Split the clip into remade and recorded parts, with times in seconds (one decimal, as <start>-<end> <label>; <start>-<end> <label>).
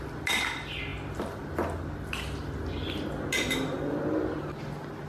0.0-5.1 recorded